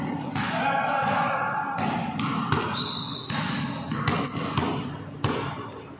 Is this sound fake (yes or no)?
no